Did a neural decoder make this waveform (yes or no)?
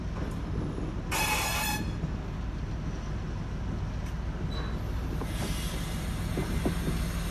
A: no